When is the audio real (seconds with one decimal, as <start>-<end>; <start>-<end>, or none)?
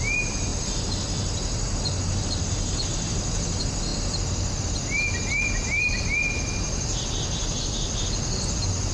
0.0-8.9